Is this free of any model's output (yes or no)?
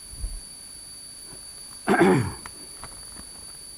no